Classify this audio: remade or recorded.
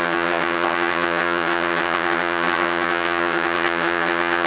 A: remade